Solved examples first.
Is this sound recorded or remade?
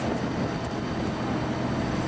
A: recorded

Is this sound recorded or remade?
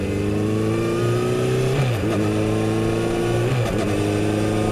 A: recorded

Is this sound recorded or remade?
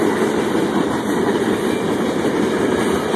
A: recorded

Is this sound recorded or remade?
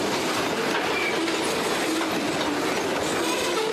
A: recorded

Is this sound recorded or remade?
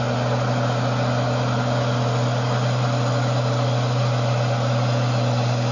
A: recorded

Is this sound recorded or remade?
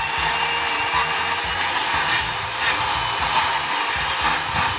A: recorded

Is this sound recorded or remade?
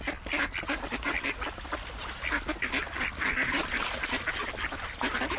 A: recorded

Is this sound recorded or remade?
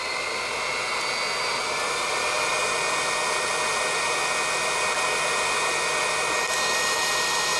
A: recorded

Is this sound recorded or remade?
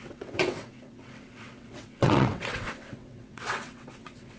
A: remade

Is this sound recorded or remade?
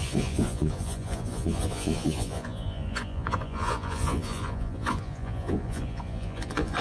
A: remade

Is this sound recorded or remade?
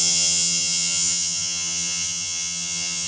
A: remade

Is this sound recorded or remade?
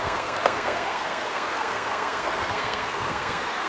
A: remade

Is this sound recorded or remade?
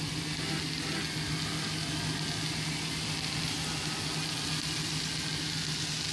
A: recorded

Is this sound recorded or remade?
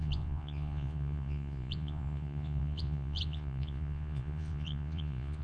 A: remade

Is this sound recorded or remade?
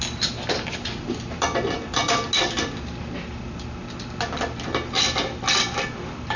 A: recorded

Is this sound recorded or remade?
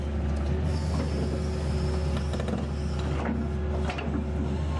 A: recorded